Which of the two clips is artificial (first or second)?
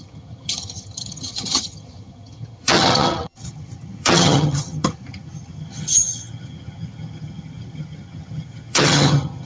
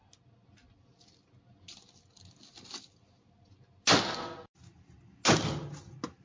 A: first